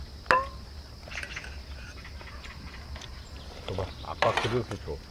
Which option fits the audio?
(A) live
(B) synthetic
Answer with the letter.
A